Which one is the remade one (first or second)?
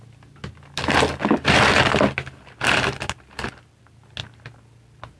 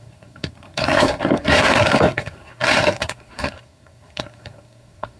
second